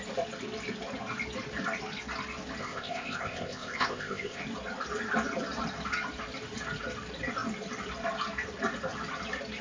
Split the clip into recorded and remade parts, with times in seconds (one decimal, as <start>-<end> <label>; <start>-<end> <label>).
0.0-2.6 recorded; 2.6-4.4 remade; 4.4-9.6 recorded